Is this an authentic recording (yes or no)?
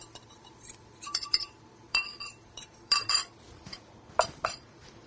no